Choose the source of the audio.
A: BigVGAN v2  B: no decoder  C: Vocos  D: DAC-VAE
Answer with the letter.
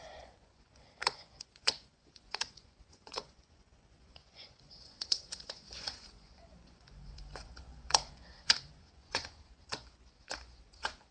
C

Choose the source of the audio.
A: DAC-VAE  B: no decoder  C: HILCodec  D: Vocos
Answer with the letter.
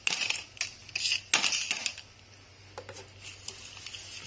B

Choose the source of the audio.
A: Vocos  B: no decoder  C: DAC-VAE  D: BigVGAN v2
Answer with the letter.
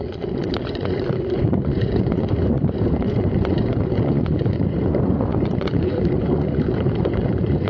A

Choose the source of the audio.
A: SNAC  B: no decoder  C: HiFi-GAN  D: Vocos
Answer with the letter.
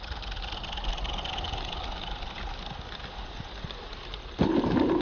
B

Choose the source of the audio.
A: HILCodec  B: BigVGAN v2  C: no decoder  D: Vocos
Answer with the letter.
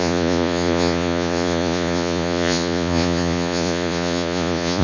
D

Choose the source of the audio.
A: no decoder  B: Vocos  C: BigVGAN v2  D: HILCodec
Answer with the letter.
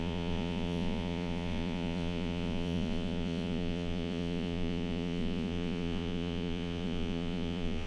B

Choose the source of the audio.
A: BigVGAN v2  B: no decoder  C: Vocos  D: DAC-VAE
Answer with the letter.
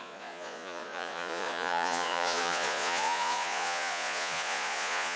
C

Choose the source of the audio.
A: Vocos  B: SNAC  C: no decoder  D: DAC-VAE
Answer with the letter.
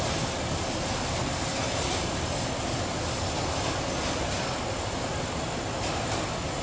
C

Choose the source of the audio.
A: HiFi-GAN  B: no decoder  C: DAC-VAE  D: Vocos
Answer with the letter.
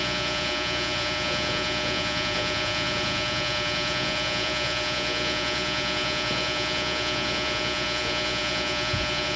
D